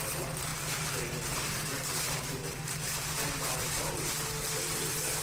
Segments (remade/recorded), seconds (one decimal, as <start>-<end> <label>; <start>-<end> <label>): 0.0-5.2 recorded